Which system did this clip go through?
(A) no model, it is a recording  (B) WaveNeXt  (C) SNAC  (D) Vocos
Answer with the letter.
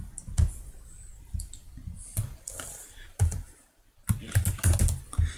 A